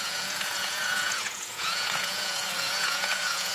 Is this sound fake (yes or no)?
yes